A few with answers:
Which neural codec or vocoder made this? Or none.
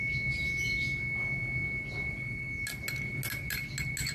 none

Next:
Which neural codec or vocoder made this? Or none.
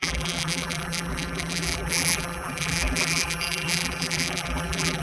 vocoder, BigVGAN v2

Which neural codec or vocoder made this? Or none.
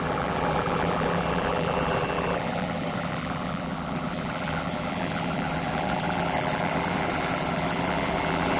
vocoder, BigVGAN v2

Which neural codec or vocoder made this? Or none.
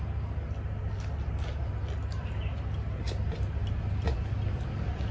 none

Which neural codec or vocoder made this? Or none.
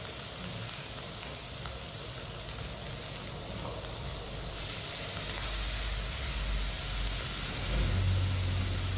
none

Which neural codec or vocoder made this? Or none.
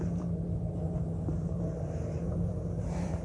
vocoder, BigVGAN v2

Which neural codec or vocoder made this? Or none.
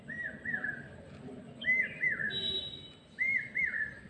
none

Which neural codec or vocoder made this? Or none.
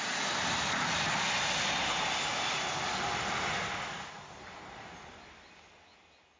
none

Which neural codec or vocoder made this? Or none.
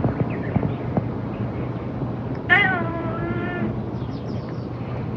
vocoder, BigVGAN v2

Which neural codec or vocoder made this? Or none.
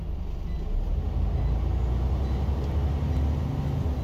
none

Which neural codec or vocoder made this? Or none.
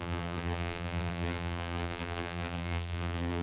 vocoder, BigVGAN v2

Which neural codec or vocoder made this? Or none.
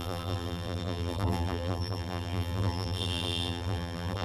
vocoder, BigVGAN v2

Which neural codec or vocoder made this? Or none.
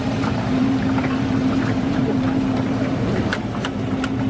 vocoder, BigVGAN v2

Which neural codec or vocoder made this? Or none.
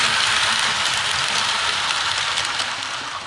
vocoder, BigVGAN v2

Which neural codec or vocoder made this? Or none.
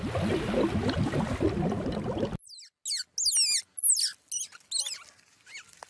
none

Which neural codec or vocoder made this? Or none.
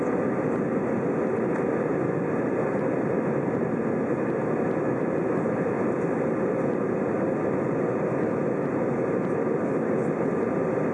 none